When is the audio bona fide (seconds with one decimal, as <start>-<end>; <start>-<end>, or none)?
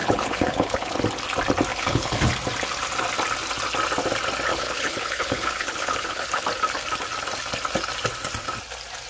1.0-1.7; 2.3-4.5; 6.4-9.1